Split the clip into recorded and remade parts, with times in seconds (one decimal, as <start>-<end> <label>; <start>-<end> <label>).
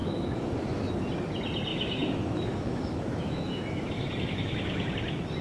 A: 0.0-0.8 remade; 0.8-1.7 recorded; 1.7-4.9 remade; 4.9-5.4 recorded